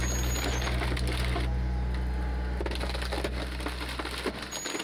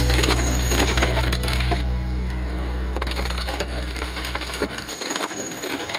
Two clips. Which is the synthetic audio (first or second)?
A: second